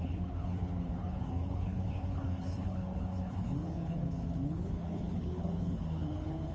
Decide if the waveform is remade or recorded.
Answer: remade